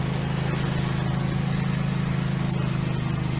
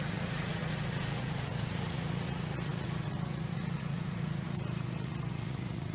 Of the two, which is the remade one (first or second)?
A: second